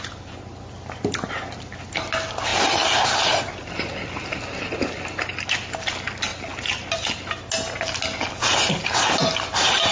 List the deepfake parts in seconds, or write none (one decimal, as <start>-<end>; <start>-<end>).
none